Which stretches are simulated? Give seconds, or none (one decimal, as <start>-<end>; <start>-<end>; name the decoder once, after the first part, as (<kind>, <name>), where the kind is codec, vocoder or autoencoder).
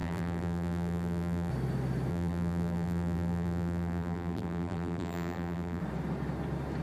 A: 0.0-1.5 (vocoder, BigVGAN v2); 2.1-5.8